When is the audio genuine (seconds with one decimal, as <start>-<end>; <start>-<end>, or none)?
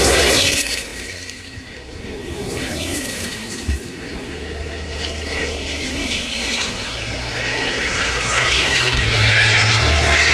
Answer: none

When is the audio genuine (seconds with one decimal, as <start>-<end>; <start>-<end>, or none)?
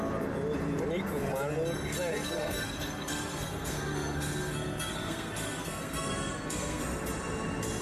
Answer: 0.0-2.1; 6.8-7.8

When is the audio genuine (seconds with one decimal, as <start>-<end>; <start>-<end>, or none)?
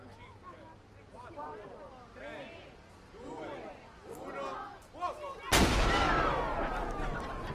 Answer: 0.0-7.5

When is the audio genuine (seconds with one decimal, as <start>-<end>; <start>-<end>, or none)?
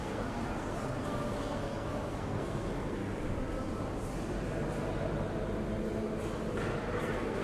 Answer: 3.0-7.0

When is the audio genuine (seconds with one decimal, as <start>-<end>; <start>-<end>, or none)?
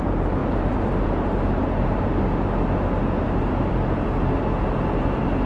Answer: 0.0-5.5